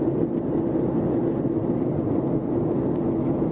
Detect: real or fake real